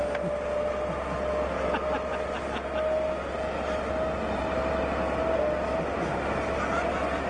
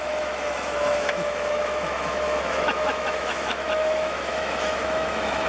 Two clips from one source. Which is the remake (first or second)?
second